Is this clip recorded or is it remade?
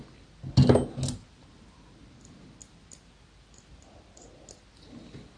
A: recorded